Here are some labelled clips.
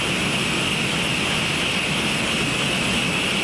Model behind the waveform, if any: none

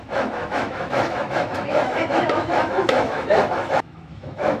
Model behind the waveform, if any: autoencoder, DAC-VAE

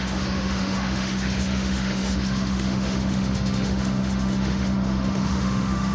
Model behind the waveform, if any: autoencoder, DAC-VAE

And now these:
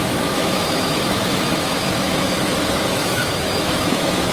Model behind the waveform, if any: autoencoder, DAC-VAE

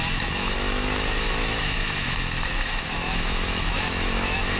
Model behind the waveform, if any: autoencoder, DAC-VAE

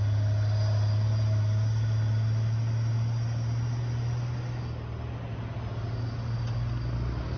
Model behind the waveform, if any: none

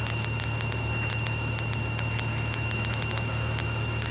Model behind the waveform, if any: autoencoder, DAC-VAE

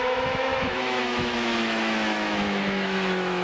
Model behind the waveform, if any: autoencoder, DAC-VAE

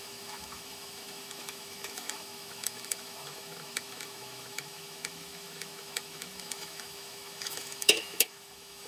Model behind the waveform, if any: autoencoder, DAC-VAE